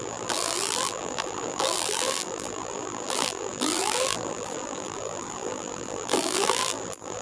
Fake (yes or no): yes